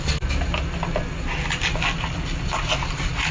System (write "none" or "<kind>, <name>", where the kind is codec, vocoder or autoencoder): none